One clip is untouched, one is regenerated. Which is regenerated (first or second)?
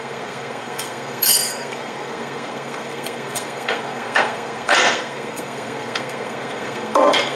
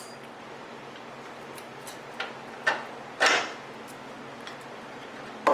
first